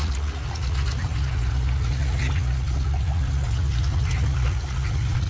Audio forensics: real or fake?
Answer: fake